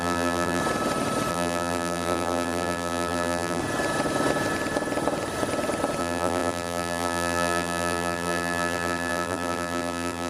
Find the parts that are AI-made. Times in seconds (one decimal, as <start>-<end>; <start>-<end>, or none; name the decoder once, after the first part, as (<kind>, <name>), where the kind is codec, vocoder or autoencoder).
0.0-0.6 (vocoder, BigVGAN v2); 1.3-3.6; 6.0-10.3